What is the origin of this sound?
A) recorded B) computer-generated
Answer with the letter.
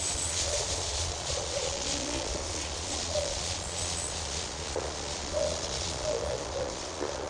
B